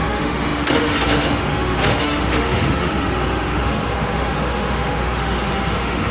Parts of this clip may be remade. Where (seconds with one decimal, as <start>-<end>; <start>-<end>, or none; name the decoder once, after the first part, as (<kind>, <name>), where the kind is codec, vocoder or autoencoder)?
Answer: 0.0-6.1 (autoencoder, DAC-VAE)